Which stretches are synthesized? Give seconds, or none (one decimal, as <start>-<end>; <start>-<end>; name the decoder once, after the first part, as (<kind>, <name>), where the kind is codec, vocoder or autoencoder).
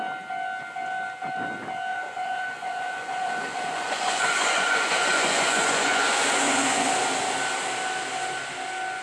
1.9-6.9 (vocoder, Vocos)